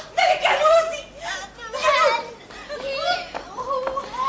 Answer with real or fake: real